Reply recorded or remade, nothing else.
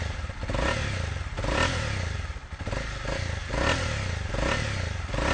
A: recorded